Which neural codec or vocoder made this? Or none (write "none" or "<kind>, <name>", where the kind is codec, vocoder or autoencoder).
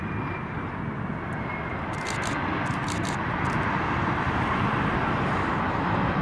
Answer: none